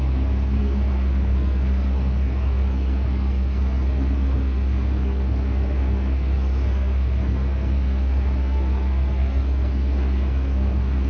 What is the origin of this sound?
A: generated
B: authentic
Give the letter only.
A